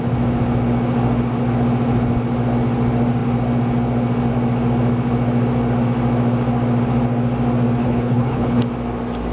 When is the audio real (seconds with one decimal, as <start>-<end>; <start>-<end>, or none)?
0.0-7.8; 8.6-9.3